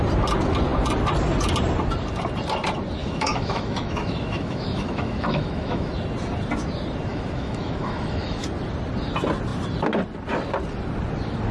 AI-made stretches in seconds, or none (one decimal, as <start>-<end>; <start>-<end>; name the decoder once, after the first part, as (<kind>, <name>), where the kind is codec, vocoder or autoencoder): 3.0-5.9 (autoencoder, DAC-VAE); 7.1-8.4